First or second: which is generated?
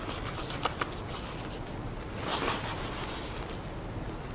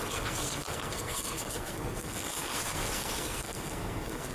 second